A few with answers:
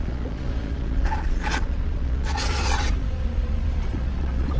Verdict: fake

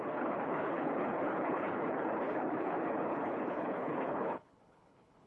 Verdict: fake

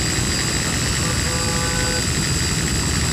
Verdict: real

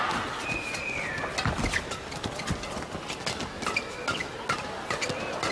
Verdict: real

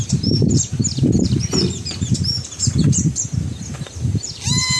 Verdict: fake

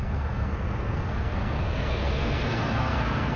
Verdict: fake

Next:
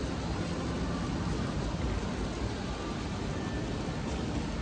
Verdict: real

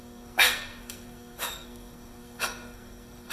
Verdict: fake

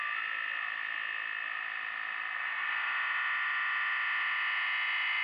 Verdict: real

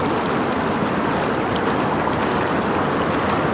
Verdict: real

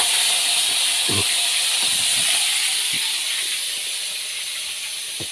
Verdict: real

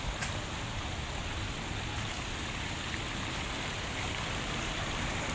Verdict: real